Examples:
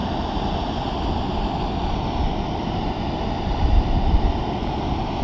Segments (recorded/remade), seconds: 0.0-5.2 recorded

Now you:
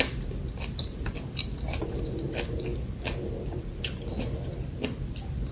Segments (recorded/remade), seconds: 0.0-5.5 recorded

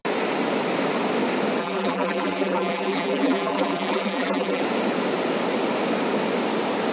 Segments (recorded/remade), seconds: 0.0-1.6 recorded; 1.6-4.6 remade; 4.6-6.9 recorded

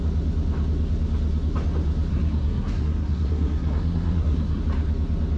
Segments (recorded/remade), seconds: 0.0-2.1 recorded; 2.1-4.6 remade; 4.6-5.4 recorded

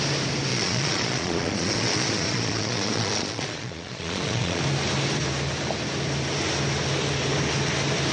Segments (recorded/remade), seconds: 0.0-0.5 recorded; 0.5-4.6 remade; 4.6-8.1 recorded

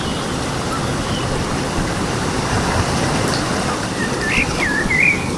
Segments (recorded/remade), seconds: 0.0-1.2 recorded; 1.2-2.2 remade; 2.2-5.4 recorded

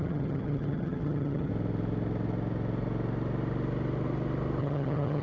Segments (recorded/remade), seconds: 0.0-1.5 remade; 1.5-4.6 recorded; 4.6-5.2 remade